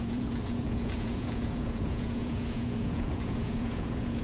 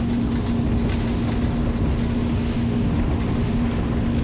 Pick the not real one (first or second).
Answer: first